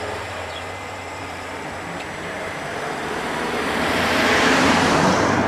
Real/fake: fake